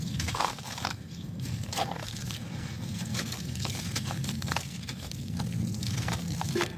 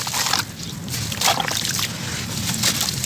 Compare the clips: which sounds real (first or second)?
second